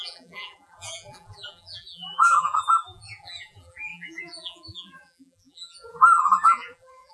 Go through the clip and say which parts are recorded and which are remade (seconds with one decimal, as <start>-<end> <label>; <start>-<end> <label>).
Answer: 0.0-7.1 remade